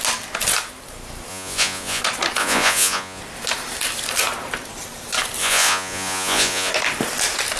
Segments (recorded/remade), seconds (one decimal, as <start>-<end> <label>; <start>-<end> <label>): 0.0-1.3 recorded; 1.3-2.0 remade; 2.0-2.4 recorded; 2.4-3.2 remade; 3.2-5.4 recorded; 5.4-6.7 remade; 6.7-7.6 recorded